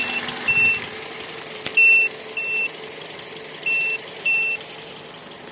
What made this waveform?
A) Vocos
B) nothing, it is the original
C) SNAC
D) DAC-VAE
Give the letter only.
B